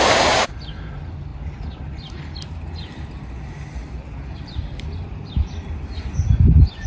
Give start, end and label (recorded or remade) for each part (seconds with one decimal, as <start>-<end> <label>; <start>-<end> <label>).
0.0-6.9 recorded

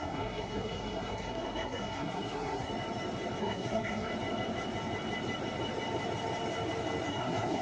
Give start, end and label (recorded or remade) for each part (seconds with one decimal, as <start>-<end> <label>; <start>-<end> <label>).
0.0-2.7 remade; 2.7-3.4 recorded; 3.4-4.1 remade; 4.1-7.1 recorded; 7.1-7.6 remade

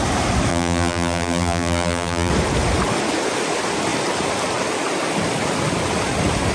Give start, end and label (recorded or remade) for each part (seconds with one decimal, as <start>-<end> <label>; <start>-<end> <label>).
0.0-0.5 recorded; 0.5-2.3 remade; 2.3-6.5 recorded

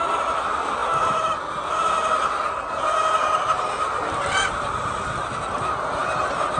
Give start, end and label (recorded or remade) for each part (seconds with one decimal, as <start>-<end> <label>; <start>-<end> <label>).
0.0-6.6 recorded

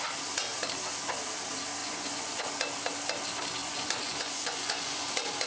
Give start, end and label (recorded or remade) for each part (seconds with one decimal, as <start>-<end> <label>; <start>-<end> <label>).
0.0-1.8 recorded; 1.8-2.5 remade; 2.5-3.6 recorded; 3.6-5.1 remade; 5.1-5.5 recorded

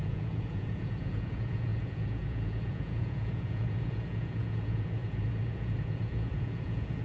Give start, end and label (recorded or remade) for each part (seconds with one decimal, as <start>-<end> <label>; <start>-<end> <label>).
0.0-7.0 remade